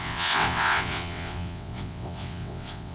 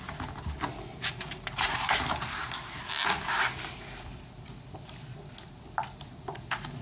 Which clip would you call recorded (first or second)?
second